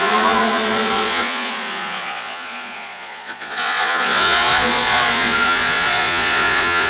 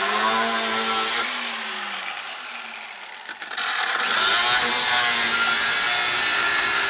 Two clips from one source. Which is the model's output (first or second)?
first